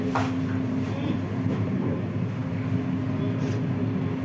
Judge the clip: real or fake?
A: real